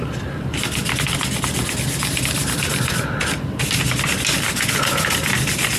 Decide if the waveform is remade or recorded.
recorded